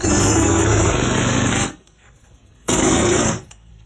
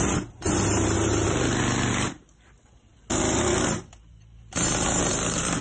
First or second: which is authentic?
second